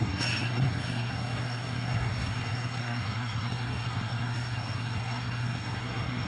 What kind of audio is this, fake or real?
fake